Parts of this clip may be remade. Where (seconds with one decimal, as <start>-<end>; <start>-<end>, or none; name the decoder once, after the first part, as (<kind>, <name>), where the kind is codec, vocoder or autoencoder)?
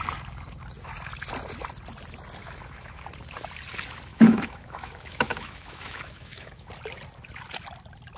2.4-3.0 (autoencoder, DAC-VAE); 4.1-6.7